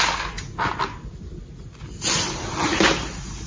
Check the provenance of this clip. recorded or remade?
recorded